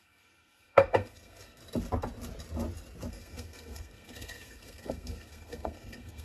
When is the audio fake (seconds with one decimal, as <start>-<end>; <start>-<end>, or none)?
0.0-1.6; 3.1-6.2